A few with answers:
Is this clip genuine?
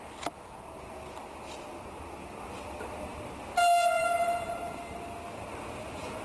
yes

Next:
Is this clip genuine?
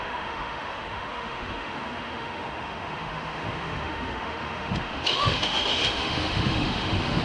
no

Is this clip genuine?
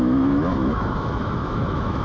no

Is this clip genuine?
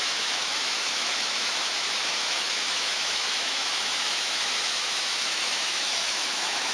no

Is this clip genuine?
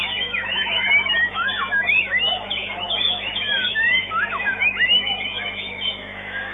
no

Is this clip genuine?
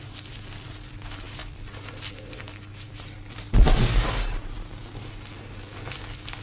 yes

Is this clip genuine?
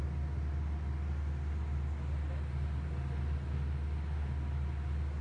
yes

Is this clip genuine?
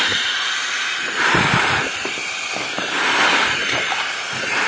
yes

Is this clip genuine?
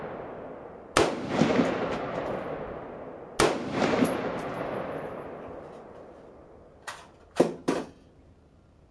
yes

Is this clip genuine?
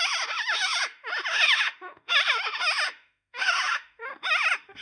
no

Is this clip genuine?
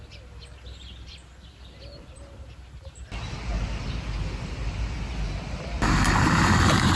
yes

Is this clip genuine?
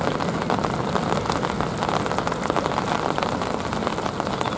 yes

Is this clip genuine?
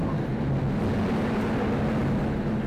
yes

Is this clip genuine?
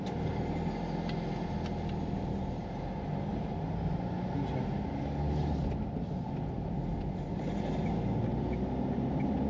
yes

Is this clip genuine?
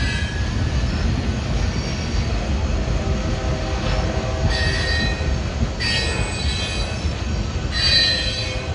yes